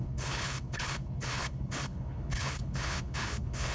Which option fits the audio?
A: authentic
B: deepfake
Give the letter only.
B